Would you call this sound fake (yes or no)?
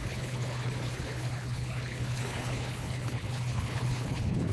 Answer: yes